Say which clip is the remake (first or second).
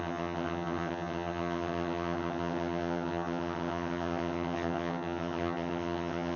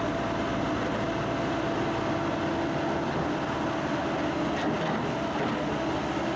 first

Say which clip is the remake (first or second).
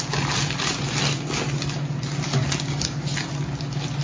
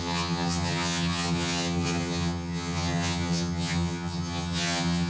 second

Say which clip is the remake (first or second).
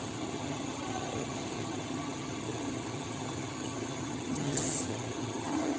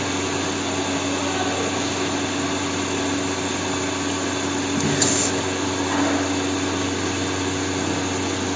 first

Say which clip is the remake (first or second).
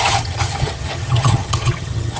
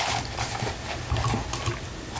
first